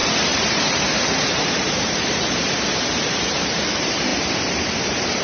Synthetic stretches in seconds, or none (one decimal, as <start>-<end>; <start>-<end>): 0.0-5.2

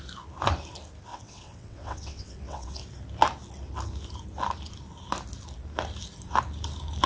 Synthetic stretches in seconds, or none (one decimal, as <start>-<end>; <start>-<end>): 1.1-2.8